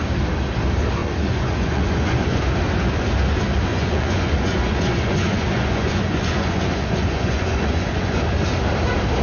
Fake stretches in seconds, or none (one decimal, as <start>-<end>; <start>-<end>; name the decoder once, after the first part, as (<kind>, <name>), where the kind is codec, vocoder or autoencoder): 1.0-2.4 (vocoder, Vocos); 3.7-8.2